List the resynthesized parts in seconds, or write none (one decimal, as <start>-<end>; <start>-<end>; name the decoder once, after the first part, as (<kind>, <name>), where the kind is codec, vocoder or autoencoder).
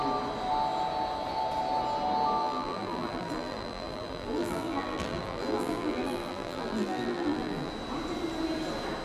2.4-7.7 (vocoder, BigVGAN v2)